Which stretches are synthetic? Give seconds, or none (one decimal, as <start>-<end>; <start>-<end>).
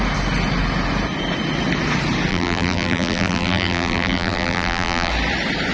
2.3-5.1